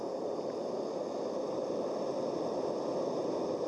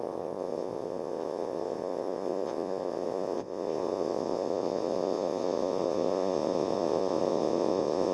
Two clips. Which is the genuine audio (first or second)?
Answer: first